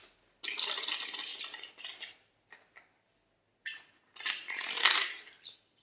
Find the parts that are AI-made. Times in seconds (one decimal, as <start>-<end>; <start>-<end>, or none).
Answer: none